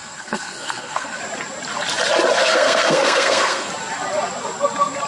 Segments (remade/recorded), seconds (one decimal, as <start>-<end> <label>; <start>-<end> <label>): 0.0-1.2 remade; 1.2-2.4 recorded; 2.4-3.7 remade; 3.7-5.1 recorded